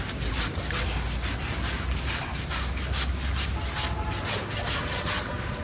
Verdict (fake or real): real